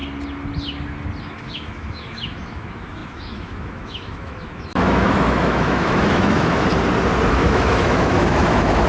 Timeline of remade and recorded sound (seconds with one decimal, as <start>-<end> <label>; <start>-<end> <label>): 0.0-1.2 recorded; 1.2-6.7 remade; 6.7-7.3 recorded; 7.3-8.9 remade